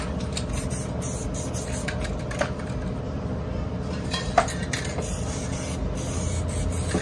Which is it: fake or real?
real